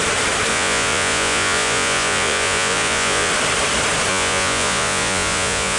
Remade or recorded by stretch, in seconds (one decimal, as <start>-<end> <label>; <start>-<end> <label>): 0.0-0.5 recorded; 0.5-3.3 remade; 3.3-4.1 recorded; 4.1-5.8 remade